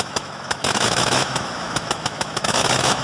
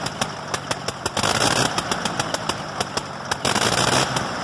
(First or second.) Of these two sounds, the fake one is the first